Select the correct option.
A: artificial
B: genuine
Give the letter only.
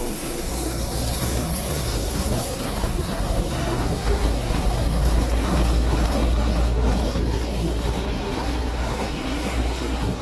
A